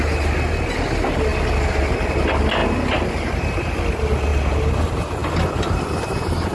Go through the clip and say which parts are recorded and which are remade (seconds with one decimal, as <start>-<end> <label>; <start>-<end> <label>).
0.0-6.5 recorded